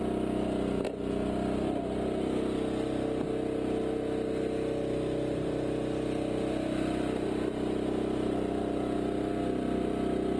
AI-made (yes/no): no